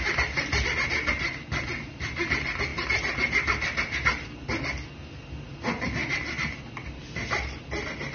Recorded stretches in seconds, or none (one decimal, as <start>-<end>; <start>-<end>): 0.0-8.1